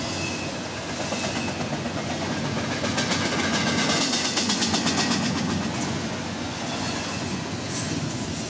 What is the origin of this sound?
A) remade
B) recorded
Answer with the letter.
A